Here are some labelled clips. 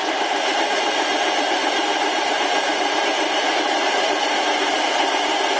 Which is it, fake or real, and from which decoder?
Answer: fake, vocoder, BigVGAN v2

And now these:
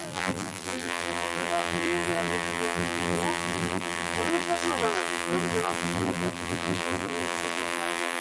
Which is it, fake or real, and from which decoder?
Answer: fake, vocoder, BigVGAN v2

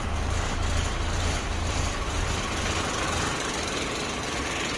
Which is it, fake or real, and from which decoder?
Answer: fake, vocoder, BigVGAN v2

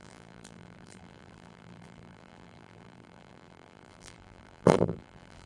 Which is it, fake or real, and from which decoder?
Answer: fake, vocoder, BigVGAN v2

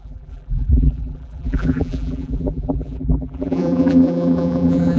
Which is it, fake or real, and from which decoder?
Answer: fake, vocoder, BigVGAN v2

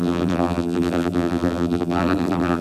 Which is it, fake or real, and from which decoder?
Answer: fake, vocoder, BigVGAN v2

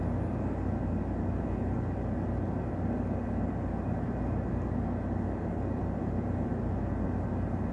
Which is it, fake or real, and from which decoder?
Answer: real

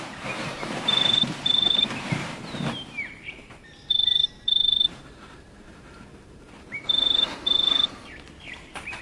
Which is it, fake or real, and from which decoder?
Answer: fake, vocoder, BigVGAN v2